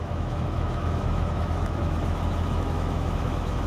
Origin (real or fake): fake